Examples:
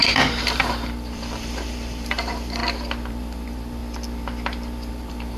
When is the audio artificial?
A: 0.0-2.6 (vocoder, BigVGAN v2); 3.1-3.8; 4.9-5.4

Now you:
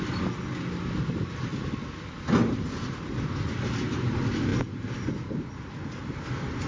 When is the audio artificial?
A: none